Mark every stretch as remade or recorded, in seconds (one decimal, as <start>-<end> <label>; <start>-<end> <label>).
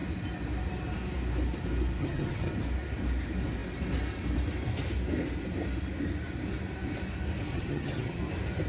0.0-2.0 recorded; 2.0-2.5 remade; 2.5-7.5 recorded; 7.5-8.2 remade; 8.2-8.7 recorded